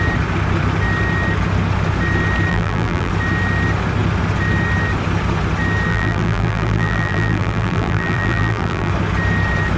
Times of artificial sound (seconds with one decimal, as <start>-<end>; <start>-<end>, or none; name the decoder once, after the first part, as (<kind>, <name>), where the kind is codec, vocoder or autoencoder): 2.5-3.1 (vocoder, BigVGAN v2); 5.9-8.9